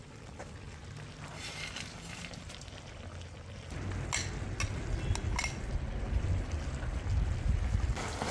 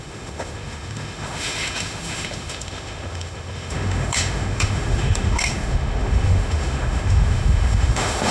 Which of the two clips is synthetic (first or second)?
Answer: second